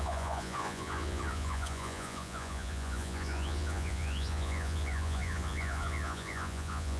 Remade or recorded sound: remade